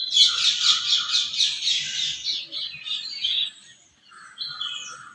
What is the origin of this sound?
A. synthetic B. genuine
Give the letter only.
B